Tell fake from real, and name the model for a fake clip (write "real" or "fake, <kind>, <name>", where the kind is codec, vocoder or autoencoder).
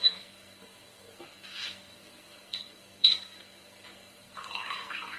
fake, codec, SNAC